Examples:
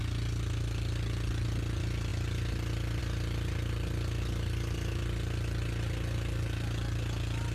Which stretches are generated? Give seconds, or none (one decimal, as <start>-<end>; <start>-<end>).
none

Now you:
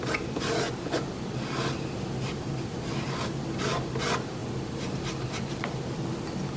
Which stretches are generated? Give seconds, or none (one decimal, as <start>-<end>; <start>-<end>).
none

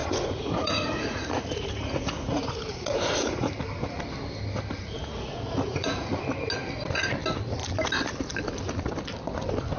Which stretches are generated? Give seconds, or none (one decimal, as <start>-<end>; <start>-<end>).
0.0-3.5; 4.8-6.1